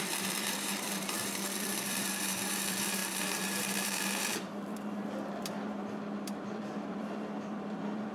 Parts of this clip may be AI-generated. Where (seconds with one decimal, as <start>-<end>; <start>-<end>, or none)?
0.0-8.1